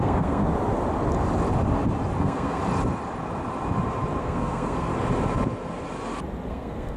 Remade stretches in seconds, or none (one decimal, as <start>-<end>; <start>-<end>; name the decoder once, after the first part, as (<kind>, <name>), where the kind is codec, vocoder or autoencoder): 0.0-0.4 (codec, SNAC); 2.2-2.6; 4.2-4.9; 6.5-7.0